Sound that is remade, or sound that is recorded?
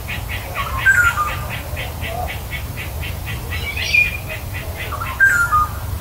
recorded